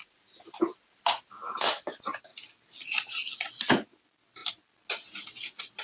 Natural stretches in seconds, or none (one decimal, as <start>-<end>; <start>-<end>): 0.0-5.8

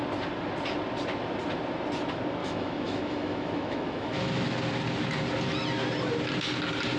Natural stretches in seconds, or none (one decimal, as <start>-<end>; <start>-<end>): 0.0-2.4; 4.6-7.0

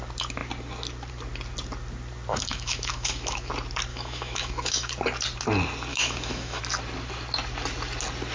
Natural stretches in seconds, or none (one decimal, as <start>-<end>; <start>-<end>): 0.0-2.3; 3.5-3.9; 4.9-5.9; 6.6-8.3

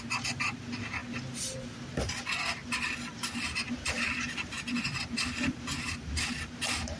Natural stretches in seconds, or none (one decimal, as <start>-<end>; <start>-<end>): 0.0-2.6

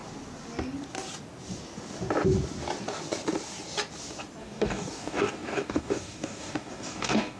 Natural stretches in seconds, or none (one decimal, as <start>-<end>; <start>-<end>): 0.0-4.4

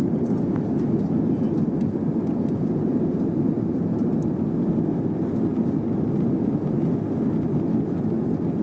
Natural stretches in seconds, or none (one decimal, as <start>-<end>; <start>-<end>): 0.0-8.6

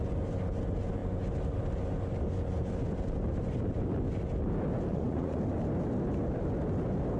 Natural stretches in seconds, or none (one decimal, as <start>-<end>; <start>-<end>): 0.0-4.9; 5.4-7.2